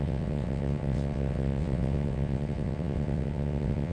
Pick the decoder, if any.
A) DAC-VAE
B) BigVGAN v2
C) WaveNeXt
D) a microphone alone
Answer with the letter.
C